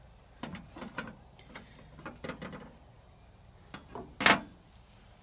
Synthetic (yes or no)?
no